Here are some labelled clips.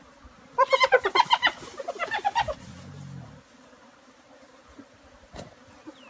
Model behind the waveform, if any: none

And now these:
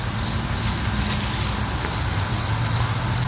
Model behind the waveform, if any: none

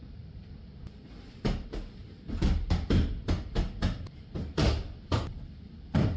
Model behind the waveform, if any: vocoder, BigVGAN v2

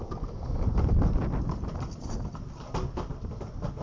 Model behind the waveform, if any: none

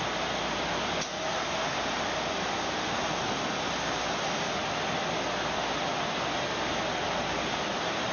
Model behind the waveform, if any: none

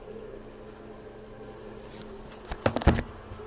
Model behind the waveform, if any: none